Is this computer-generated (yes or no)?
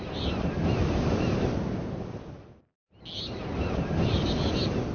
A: no